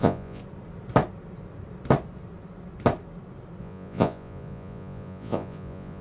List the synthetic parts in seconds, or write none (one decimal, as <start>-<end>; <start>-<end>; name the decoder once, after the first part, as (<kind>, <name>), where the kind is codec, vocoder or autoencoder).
0.0-0.4 (vocoder, Vocos); 3.6-6.0